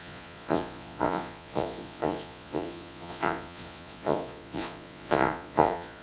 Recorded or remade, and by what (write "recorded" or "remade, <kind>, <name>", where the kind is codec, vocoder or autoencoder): remade, vocoder, Vocos